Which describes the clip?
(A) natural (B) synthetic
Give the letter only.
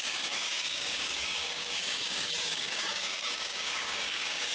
B